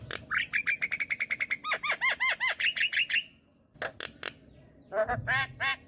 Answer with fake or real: real